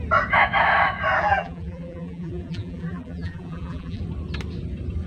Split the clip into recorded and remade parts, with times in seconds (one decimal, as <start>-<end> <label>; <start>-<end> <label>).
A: 0.0-1.2 recorded; 1.2-4.0 remade; 4.0-5.1 recorded